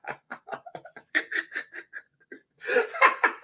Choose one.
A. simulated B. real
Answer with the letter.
A